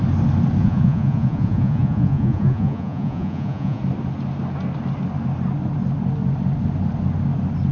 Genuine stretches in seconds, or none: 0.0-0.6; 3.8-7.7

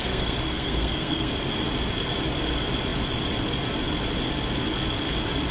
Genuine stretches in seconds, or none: 1.3-5.5

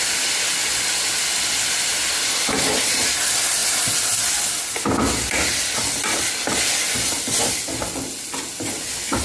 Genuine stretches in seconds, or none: 0.0-9.2

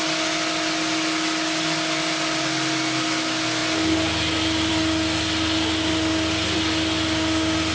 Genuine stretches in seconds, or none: 0.0-7.7

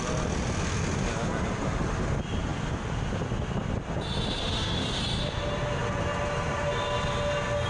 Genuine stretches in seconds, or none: 0.0-4.4; 5.0-7.7